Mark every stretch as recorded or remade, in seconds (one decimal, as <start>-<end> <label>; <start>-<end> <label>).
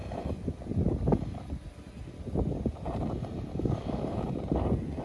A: 0.0-3.5 recorded; 3.5-4.2 remade; 4.2-5.0 recorded